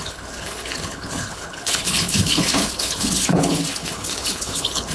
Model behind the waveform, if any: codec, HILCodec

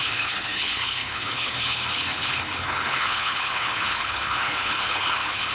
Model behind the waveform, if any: codec, HILCodec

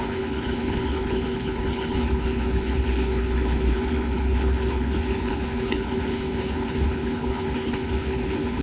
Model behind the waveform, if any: codec, HILCodec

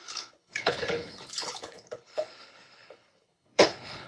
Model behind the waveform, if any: codec, HILCodec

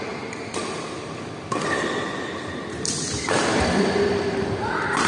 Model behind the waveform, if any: none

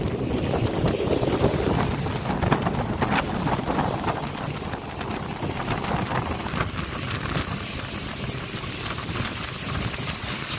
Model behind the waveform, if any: none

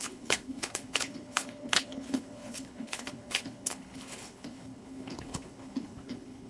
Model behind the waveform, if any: codec, HILCodec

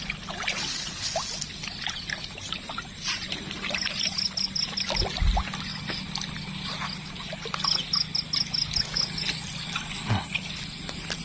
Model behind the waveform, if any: none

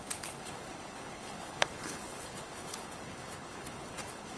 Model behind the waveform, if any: codec, HILCodec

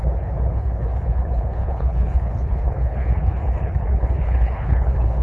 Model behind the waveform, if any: codec, HILCodec